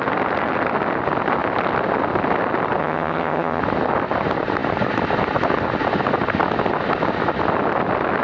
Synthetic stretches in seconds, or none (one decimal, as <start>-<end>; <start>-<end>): 2.8-3.6